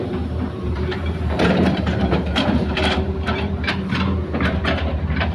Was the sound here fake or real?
fake